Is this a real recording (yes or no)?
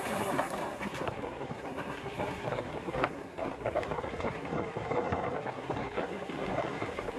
no